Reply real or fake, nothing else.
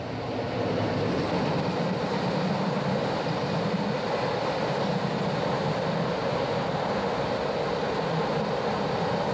real